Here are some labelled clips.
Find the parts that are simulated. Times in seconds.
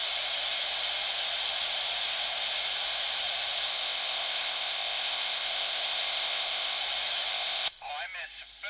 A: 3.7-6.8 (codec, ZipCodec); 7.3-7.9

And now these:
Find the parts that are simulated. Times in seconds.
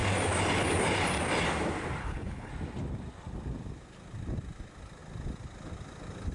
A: 2.0-2.5 (codec, HILCodec)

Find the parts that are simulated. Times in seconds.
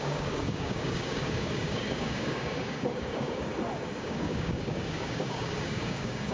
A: 0.0-3.5 (codec, DAC); 4.0-6.3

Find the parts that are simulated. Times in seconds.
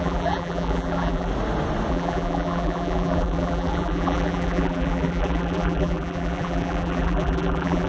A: 0.0-1.3 (vocoder, BigVGAN v2); 1.9-7.9